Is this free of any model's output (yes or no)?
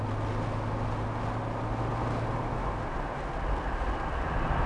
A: yes